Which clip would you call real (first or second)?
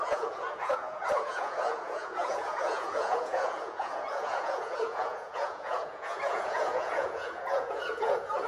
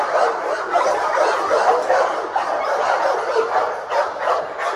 second